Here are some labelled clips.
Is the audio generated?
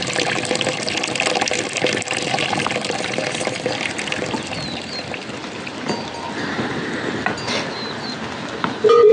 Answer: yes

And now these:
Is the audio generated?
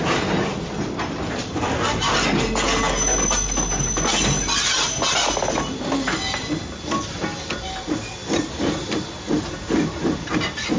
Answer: no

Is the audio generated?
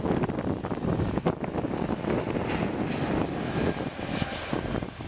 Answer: no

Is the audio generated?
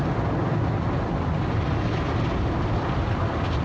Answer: no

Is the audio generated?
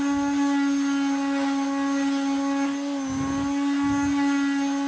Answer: no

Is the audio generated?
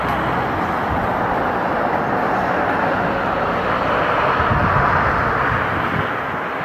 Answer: no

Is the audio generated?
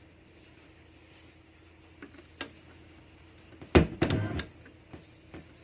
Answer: no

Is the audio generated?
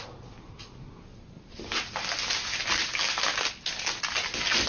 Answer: no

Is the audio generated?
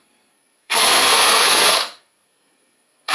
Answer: yes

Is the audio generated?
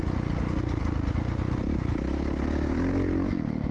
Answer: no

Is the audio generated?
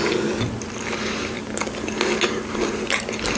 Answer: no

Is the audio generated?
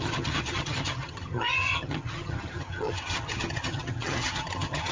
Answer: yes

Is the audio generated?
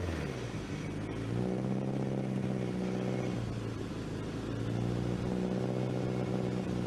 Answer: no